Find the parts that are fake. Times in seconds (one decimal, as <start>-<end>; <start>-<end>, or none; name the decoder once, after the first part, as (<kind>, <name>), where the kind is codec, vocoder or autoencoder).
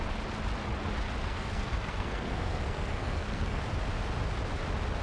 1.2-3.6 (codec, SNAC)